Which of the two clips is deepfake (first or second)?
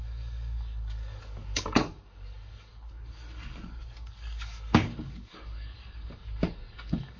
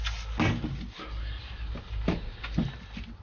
first